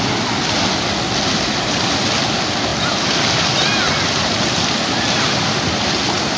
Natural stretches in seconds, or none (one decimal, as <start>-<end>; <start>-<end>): 0.0-6.4